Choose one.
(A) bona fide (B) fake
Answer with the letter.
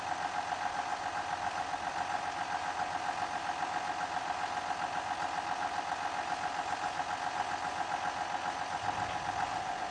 A